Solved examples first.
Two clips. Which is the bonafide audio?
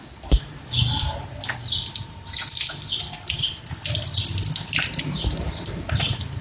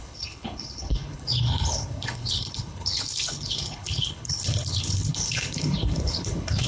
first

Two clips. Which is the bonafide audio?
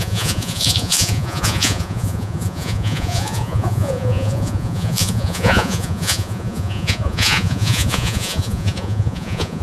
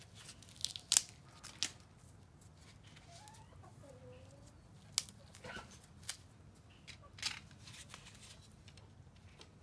second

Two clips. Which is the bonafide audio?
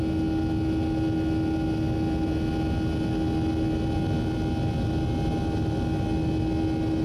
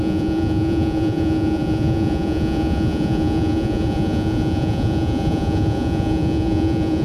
first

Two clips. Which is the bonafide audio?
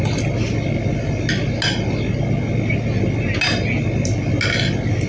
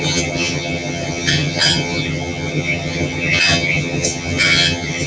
first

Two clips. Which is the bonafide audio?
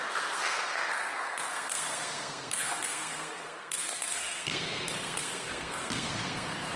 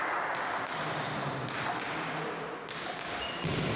second